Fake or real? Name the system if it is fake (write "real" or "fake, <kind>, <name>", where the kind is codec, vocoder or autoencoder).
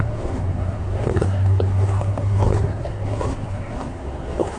fake, codec, SNAC